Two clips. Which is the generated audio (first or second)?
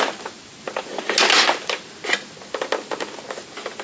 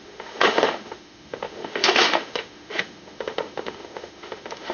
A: second